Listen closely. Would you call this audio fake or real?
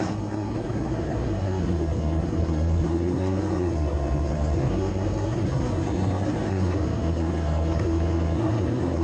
fake